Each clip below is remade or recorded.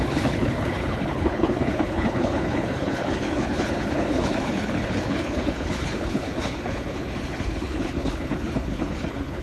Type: remade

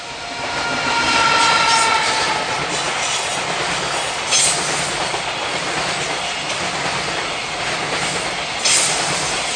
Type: recorded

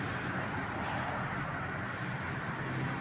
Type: recorded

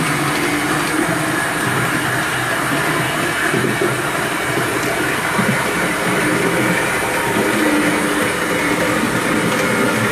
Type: recorded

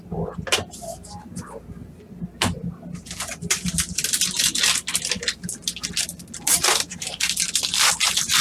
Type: remade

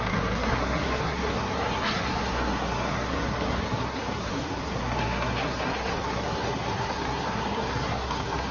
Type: remade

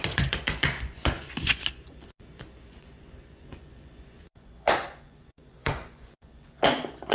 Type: remade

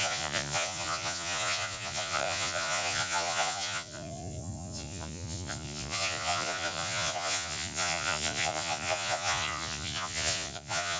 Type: remade